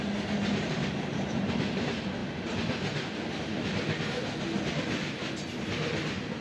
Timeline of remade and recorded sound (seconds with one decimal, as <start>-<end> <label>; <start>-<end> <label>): 0.0-6.4 recorded

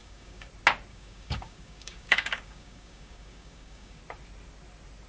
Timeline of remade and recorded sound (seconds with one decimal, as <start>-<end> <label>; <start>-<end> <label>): 0.0-0.5 remade; 0.5-0.9 recorded; 0.9-4.0 remade; 4.0-5.1 recorded

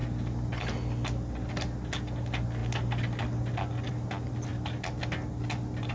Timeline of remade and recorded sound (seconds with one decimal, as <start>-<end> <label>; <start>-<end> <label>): 0.0-5.9 recorded

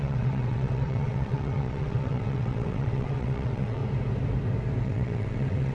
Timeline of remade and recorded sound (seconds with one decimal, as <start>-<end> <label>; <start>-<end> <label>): 0.0-3.8 remade; 3.8-4.8 recorded; 4.8-5.7 remade

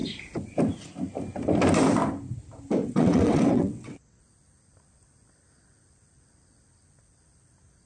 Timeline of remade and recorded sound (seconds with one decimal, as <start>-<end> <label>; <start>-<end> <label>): 0.0-2.8 recorded; 2.8-4.2 remade; 4.2-7.9 recorded